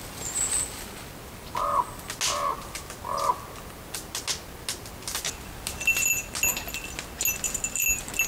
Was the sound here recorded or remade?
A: recorded